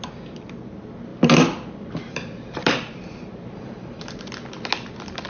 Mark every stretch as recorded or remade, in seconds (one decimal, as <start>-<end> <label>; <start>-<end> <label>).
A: 0.0-1.1 recorded; 1.1-4.3 remade; 4.3-5.3 recorded